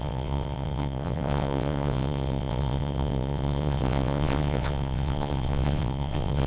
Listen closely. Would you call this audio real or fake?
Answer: fake